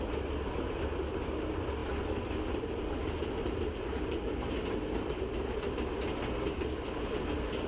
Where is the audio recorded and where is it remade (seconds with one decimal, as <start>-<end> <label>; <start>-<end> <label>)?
0.0-7.7 recorded